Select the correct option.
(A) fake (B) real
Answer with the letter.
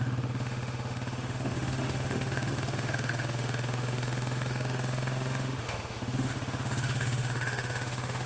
A